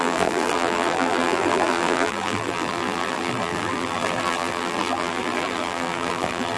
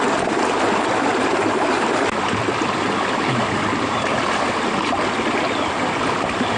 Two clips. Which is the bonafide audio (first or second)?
second